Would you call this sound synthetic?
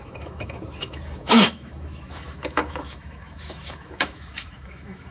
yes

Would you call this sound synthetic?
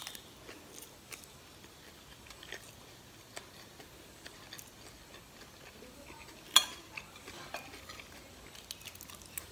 no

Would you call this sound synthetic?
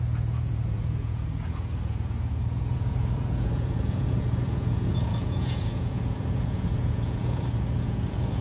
yes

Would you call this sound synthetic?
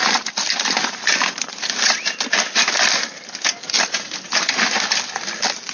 no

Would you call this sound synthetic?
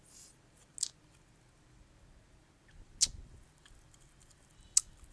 no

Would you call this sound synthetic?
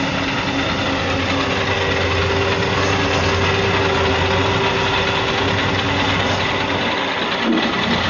no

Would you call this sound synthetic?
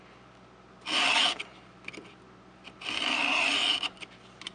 no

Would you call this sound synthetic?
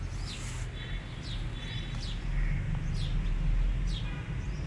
no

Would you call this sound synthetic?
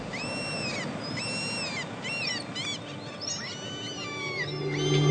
no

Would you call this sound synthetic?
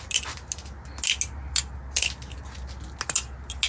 no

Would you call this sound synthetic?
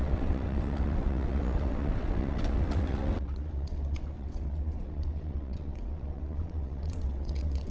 yes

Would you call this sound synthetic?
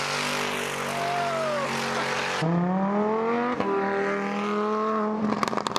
no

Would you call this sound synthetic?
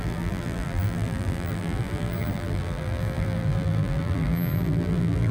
yes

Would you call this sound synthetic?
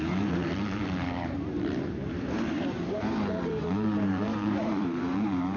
yes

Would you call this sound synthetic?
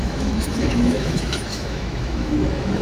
yes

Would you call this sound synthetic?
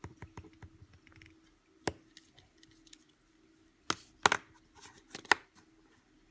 no